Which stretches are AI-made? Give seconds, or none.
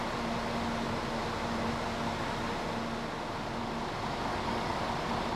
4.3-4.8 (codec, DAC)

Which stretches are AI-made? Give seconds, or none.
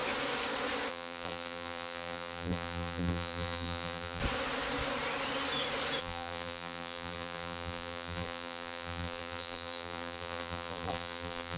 0.9-4.2 (vocoder, BigVGAN v2); 6.0-11.6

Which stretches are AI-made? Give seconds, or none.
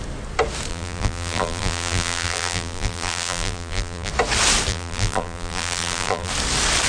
0.7-4.1 (vocoder, BigVGAN v2); 4.7-6.3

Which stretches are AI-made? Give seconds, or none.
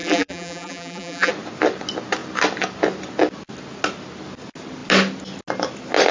0.0-1.3 (vocoder, BigVGAN v2)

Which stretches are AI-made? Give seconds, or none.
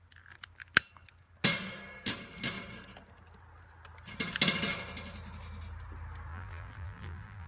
6.3-7.5 (vocoder, BigVGAN v2)